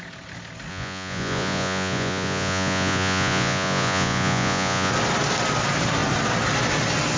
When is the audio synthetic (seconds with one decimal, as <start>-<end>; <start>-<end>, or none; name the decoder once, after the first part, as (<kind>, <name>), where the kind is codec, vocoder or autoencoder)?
0.7-4.9 (vocoder, Vocos)